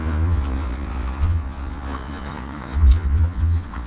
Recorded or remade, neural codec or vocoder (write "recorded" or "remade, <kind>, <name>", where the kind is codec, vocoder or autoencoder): remade, vocoder, Vocos